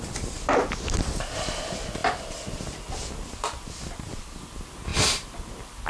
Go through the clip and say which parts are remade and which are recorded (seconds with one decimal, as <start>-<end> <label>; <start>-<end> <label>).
0.0-5.9 recorded